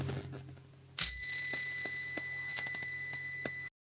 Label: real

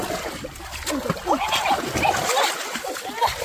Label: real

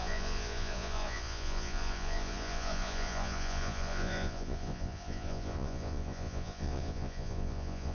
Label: fake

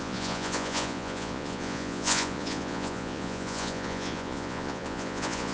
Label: fake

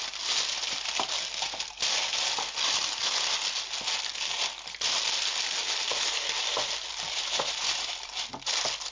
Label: real